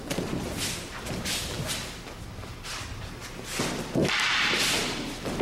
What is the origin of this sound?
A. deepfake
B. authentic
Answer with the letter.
B